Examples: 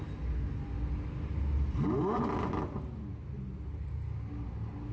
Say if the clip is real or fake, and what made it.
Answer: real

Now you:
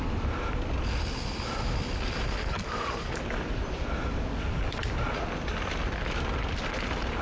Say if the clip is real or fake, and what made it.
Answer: real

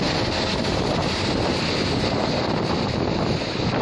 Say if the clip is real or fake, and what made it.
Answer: real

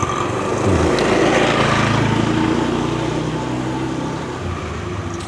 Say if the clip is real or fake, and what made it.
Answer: real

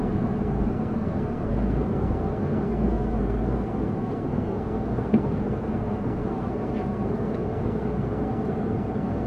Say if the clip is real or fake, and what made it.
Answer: fake, codec, SNAC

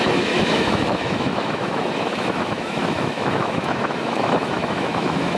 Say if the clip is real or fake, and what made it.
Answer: fake, autoencoder, DAC-VAE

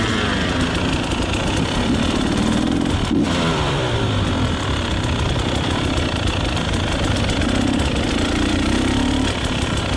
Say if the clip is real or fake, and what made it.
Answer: fake, vocoder, BigVGAN v2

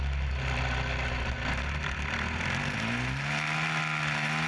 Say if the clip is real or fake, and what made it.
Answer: real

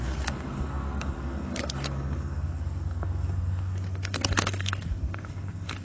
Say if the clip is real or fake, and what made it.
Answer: fake, codec, SNAC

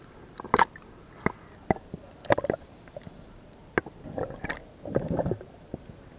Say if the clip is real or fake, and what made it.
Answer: real